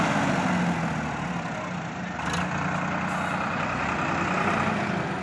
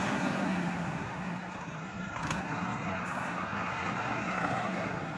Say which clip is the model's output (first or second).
second